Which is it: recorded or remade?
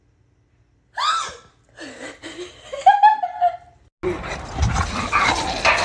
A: recorded